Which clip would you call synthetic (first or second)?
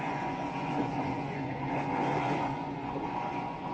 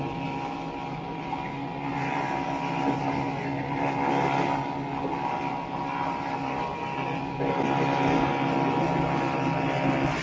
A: first